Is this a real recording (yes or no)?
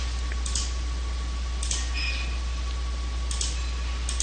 yes